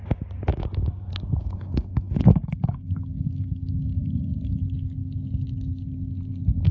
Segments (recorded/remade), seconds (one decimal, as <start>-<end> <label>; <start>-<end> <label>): 0.0-0.5 recorded; 0.5-4.5 remade; 4.5-6.7 recorded